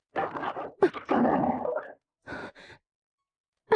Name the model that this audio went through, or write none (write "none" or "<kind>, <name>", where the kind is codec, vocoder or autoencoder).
none